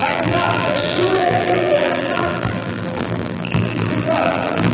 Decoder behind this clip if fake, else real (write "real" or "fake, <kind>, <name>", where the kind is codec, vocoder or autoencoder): fake, vocoder, BigVGAN v2